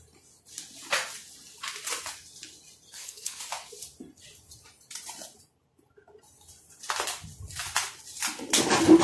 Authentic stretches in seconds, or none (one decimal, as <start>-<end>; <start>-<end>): 0.0-2.9; 3.4-9.0